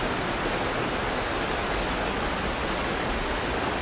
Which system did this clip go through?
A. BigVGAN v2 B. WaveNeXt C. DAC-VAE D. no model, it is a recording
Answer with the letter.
D